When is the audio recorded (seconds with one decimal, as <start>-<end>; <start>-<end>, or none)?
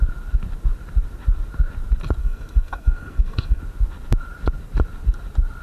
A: 0.0-2.2; 3.6-5.6